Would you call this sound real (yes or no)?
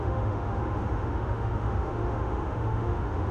no